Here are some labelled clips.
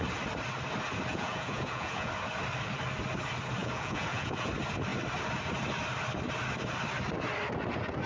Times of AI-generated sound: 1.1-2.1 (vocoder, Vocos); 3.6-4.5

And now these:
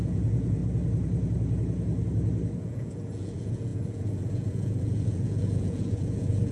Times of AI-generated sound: 0.0-0.6 (vocoder, Vocos); 2.5-6.5

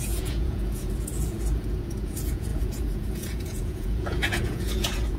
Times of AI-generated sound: 0.0-5.2 (vocoder, Vocos)

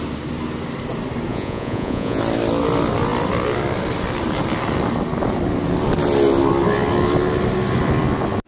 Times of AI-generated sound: 1.3-2.2 (vocoder, Vocos)

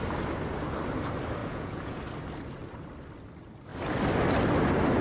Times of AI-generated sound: 1.4-2.0 (vocoder, Vocos)

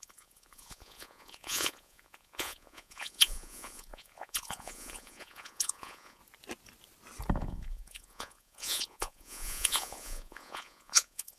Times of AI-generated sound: 0.0-6.2 (vocoder, Vocos); 7.3-11.4